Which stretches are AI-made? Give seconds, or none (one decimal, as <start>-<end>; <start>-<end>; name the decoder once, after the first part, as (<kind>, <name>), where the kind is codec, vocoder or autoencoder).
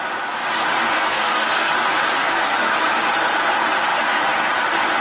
1.0-1.7 (codec, SNAC); 2.2-2.7